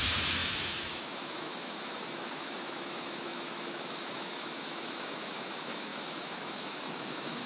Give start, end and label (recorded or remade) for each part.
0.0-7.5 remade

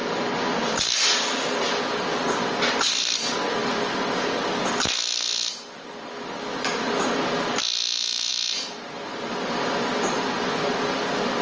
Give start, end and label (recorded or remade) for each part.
0.0-11.4 recorded